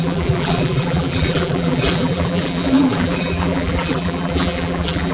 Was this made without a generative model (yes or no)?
no